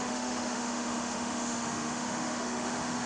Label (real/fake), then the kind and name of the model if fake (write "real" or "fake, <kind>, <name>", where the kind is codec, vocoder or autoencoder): fake, autoencoder, DAC-VAE